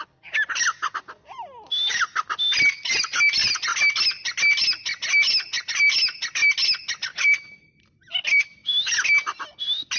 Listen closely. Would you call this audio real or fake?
real